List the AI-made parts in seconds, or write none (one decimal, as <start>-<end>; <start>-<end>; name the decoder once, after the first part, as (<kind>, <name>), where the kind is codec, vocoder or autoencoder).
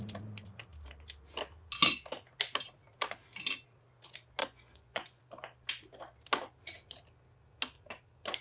4.4-5.2 (vocoder, Vocos)